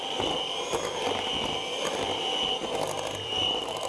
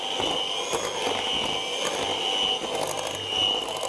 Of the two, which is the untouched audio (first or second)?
second